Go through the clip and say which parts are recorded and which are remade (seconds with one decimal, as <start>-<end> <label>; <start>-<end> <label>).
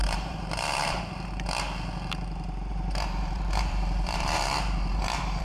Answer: 0.0-1.0 remade; 1.0-2.7 recorded; 2.7-5.4 remade